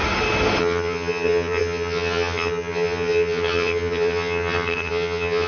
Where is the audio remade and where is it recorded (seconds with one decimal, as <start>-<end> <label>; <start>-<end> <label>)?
0.0-0.6 recorded; 0.6-5.5 remade